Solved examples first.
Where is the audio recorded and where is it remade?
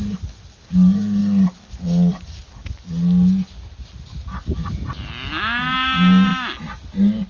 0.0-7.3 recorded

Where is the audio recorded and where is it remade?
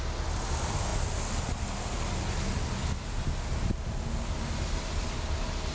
0.0-5.7 recorded